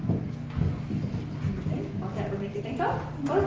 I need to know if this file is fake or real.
real